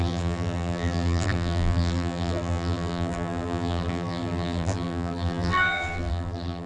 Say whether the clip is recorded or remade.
remade